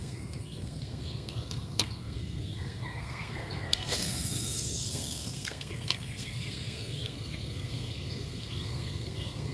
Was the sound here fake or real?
fake